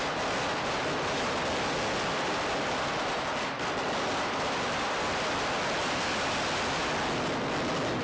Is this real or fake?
real